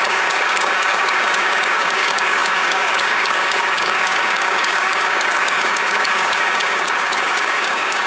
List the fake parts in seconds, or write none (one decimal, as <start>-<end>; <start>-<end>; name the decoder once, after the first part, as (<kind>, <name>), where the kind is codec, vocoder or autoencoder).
0.0-8.1 (codec, DAC)